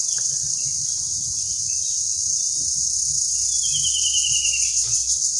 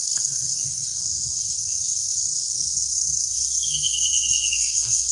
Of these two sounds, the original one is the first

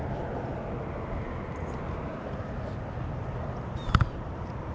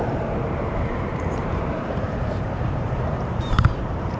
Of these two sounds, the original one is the first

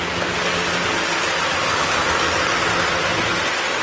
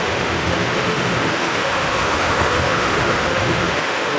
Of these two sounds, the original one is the first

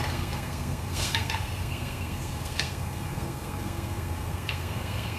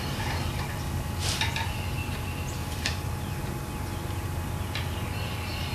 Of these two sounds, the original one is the second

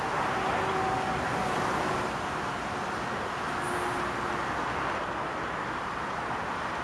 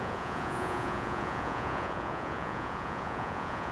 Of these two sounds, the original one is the first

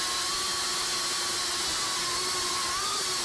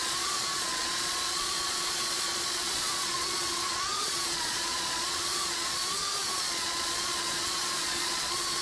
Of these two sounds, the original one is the first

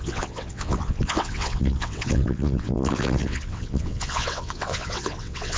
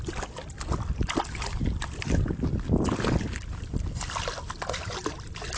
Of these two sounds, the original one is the second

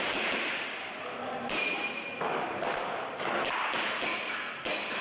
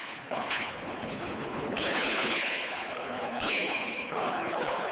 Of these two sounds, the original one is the first